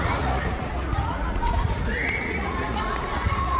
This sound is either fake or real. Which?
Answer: fake